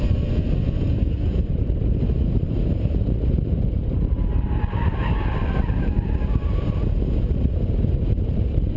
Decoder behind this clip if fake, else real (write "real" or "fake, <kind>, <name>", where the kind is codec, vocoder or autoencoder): fake, vocoder, BigVGAN v2